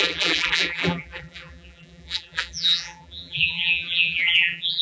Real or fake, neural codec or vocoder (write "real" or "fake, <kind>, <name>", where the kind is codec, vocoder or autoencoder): fake, vocoder, BigVGAN v2